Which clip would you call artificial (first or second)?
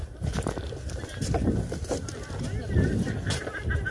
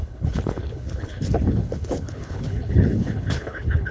second